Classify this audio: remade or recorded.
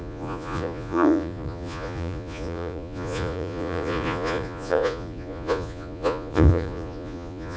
remade